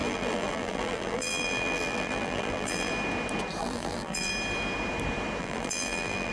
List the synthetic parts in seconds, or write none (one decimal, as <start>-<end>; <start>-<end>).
0.0-2.9; 3.6-4.3; 5.4-6.3